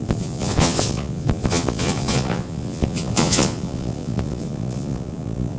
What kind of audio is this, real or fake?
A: fake